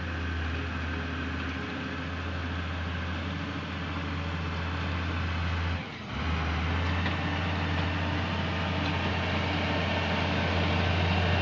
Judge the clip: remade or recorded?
recorded